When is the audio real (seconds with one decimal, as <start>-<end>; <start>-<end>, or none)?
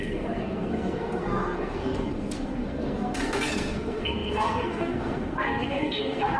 none